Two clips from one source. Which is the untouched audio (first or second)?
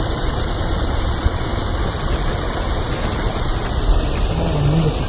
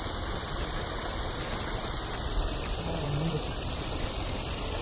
first